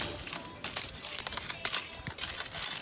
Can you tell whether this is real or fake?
real